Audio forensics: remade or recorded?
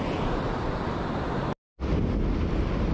recorded